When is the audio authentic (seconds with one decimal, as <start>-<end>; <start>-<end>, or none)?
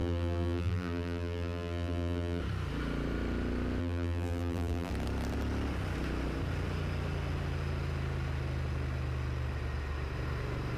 2.4-3.8; 4.9-10.8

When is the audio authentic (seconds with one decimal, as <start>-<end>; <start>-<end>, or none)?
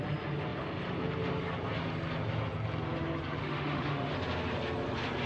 0.0-3.4; 4.1-5.3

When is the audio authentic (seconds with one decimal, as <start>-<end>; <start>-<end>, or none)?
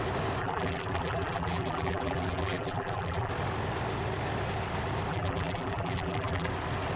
0.0-0.4; 3.3-5.1; 6.5-7.0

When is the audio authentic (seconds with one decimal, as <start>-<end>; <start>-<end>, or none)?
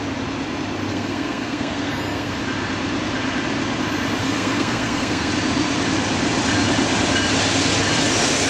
0.0-0.9; 2.3-4.2; 5.3-8.5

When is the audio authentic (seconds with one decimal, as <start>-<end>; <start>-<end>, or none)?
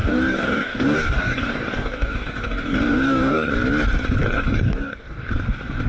3.5-4.2; 5.3-5.9